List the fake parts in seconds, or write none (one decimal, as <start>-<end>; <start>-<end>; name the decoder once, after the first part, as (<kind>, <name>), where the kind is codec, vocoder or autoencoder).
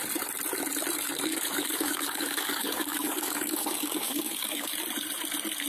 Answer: 1.3-4.7 (codec, DAC)